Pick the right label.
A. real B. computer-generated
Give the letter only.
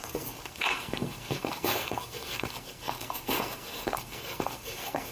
B